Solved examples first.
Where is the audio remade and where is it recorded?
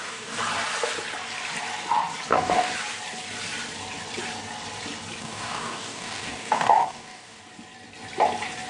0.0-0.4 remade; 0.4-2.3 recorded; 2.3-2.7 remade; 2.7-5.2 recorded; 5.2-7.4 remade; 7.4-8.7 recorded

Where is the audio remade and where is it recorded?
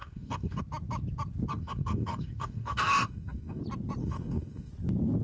0.0-0.6 remade; 0.6-1.5 recorded; 1.5-3.6 remade; 3.6-4.0 recorded; 4.0-4.7 remade; 4.7-5.2 recorded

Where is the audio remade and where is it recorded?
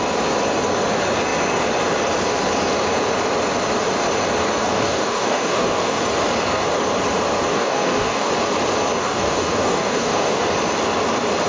0.0-4.6 recorded; 4.6-6.0 remade; 6.0-7.5 recorded; 7.5-8.3 remade; 8.3-9.0 recorded; 9.0-10.4 remade; 10.4-11.5 recorded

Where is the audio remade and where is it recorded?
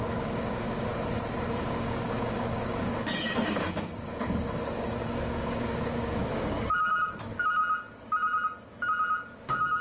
0.0-0.9 remade; 0.9-1.5 recorded; 1.5-7.6 remade; 7.6-9.4 recorded; 9.4-9.8 remade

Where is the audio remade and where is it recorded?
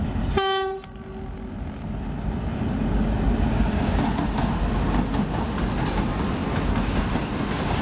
0.0-3.5 recorded; 3.5-4.1 remade; 4.1-7.8 recorded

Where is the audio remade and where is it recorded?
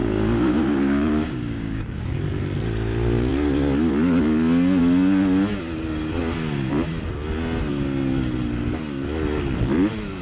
0.0-2.2 remade; 2.2-10.2 recorded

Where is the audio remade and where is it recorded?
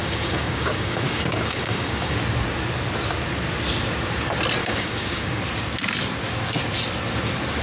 0.0-2.2 remade; 2.2-4.6 recorded; 4.6-5.4 remade; 5.4-7.6 recorded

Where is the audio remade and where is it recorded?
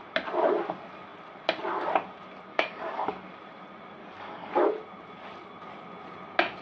0.0-2.5 recorded; 2.5-3.1 remade; 3.1-4.0 recorded; 4.0-4.5 remade; 4.5-6.6 recorded